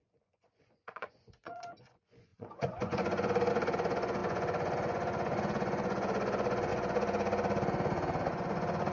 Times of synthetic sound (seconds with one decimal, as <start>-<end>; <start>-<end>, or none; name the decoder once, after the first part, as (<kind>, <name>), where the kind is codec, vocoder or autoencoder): 0.0-8.9 (vocoder, Vocos)